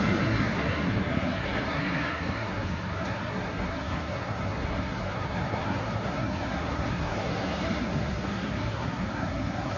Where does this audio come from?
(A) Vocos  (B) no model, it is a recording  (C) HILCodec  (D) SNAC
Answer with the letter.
D